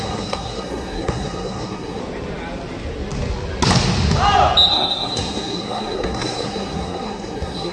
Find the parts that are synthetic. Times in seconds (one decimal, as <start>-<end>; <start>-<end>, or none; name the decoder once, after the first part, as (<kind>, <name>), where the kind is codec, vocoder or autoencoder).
0.0-2.0 (codec, SNAC); 4.7-7.7